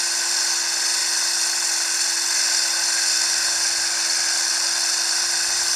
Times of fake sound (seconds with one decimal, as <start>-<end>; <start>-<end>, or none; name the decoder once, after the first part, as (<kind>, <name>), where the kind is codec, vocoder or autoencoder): none